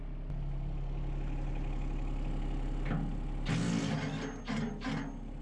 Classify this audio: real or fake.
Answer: real